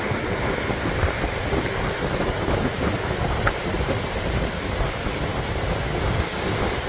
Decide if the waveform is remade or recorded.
recorded